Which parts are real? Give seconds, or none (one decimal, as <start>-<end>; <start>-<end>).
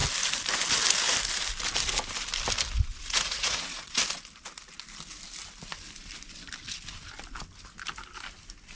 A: 0.0-2.9; 4.0-8.8